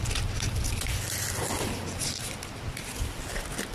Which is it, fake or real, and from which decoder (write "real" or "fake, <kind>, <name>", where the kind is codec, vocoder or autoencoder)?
real